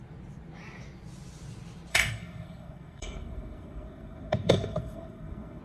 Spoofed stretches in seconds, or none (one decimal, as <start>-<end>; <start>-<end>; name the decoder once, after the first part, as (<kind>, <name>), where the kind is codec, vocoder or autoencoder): 1.9-5.6 (codec, SNAC)